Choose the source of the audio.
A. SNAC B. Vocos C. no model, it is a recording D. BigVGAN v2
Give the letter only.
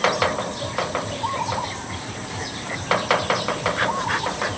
D